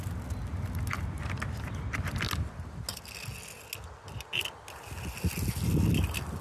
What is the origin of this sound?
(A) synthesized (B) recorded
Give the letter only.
B